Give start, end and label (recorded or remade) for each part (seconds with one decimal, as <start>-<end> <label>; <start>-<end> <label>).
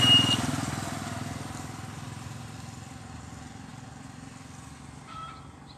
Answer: 0.0-5.8 recorded